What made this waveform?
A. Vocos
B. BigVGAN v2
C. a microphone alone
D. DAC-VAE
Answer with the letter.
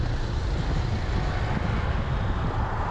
C